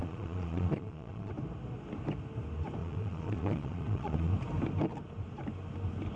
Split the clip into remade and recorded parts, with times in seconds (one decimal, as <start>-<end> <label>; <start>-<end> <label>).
0.0-1.3 remade; 1.3-2.8 recorded; 2.8-4.3 remade; 4.3-6.2 recorded